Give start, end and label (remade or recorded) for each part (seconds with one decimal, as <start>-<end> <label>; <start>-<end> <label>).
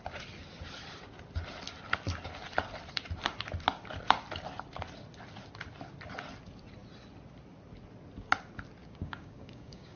0.0-8.8 recorded; 8.8-10.0 remade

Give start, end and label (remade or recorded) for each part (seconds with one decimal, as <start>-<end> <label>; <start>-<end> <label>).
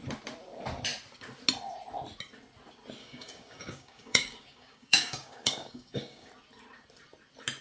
0.0-3.0 recorded; 3.0-6.3 remade; 6.3-7.6 recorded